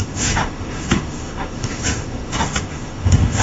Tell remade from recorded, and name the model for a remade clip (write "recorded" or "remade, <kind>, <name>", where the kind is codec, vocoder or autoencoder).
remade, autoencoder, DAC-VAE